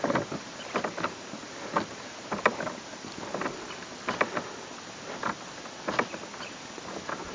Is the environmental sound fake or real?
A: real